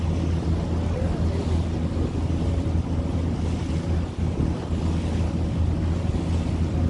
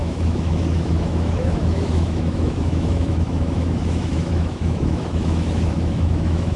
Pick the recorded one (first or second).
first